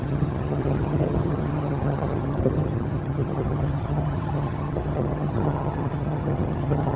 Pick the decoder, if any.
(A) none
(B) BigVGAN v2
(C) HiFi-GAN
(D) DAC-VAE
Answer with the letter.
C